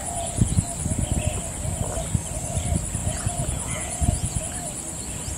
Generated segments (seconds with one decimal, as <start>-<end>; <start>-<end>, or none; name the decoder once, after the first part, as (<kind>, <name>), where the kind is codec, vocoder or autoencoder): 0.0-0.6 (vocoder, Vocos); 3.0-4.4